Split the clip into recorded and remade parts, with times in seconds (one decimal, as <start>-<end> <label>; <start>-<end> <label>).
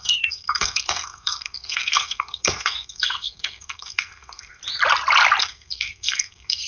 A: 0.0-4.6 remade; 4.6-5.4 recorded; 5.4-6.7 remade